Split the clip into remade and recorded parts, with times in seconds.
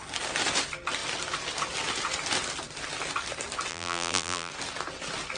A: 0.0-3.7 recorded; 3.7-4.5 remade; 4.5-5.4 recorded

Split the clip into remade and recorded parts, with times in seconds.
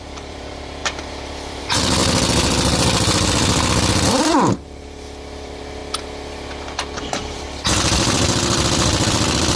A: 0.0-5.8 remade; 5.8-7.0 recorded; 7.0-9.6 remade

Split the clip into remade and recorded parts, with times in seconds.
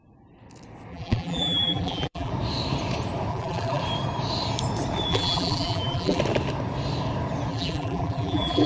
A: 0.0-0.9 recorded; 0.9-2.3 remade; 2.3-3.3 recorded; 3.3-3.8 remade; 3.8-5.1 recorded; 5.1-6.2 remade; 6.2-7.5 recorded; 7.5-8.7 remade